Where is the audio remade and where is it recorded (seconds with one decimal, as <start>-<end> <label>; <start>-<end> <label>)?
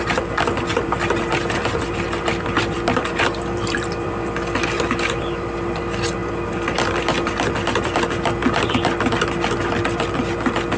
0.0-0.7 recorded; 0.7-5.8 remade; 5.8-6.2 recorded; 6.2-8.0 remade; 8.0-8.4 recorded; 8.4-9.1 remade; 9.1-10.8 recorded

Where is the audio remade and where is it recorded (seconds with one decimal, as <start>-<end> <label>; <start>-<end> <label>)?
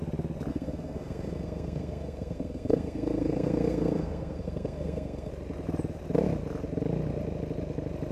0.0-0.5 recorded; 0.5-5.3 remade; 5.3-8.1 recorded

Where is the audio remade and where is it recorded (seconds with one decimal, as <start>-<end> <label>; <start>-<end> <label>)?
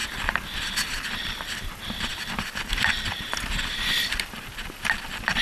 0.0-5.4 recorded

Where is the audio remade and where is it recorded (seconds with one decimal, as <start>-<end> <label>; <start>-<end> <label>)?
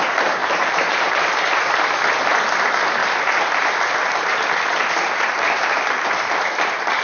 0.0-0.4 recorded; 0.4-1.5 remade; 1.5-3.0 recorded; 3.0-6.1 remade; 6.1-7.0 recorded